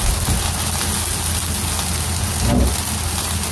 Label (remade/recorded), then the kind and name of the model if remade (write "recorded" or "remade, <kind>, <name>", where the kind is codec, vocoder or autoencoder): recorded